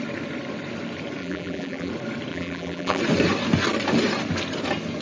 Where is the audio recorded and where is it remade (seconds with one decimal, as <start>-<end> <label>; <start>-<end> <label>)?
0.0-1.2 recorded; 1.2-1.9 remade; 1.9-2.3 recorded; 2.3-3.0 remade; 3.0-5.0 recorded